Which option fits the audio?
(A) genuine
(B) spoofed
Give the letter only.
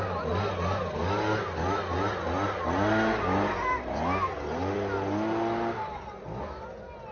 A